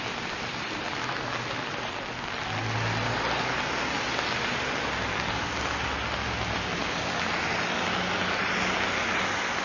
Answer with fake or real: real